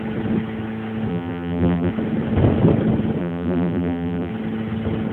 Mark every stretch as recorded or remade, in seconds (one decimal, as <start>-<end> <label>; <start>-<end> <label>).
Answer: 0.0-1.1 recorded; 1.1-1.9 remade; 1.9-3.2 recorded; 3.2-4.3 remade; 4.3-5.1 recorded